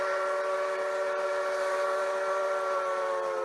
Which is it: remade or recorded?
recorded